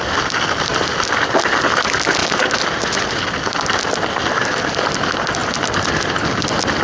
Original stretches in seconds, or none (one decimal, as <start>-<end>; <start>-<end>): 0.0-2.2; 3.2-6.8